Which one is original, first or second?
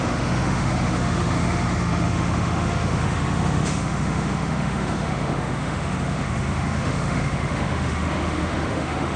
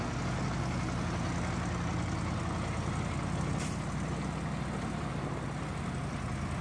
second